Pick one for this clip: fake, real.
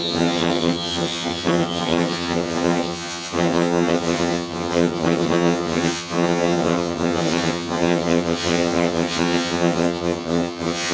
fake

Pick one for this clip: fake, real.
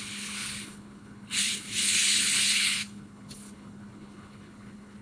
fake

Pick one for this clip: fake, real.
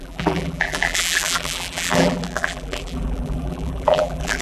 fake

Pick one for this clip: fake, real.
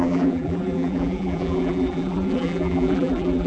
fake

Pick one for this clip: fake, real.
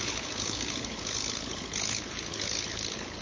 fake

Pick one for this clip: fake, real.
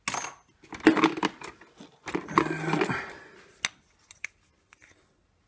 real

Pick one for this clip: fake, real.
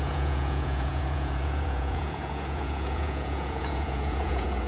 fake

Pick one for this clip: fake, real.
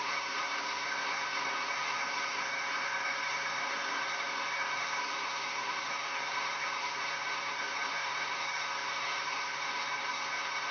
fake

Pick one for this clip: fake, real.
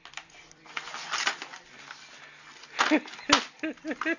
real